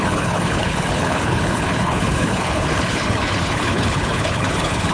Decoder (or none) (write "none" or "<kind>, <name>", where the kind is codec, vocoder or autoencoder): codec, HILCodec